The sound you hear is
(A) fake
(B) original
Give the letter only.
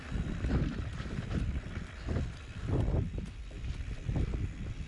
B